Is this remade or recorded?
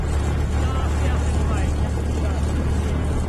recorded